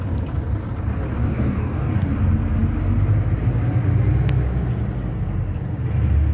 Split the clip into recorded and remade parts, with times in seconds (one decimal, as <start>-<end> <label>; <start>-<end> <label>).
0.0-1.2 recorded; 1.2-2.1 remade; 2.1-6.3 recorded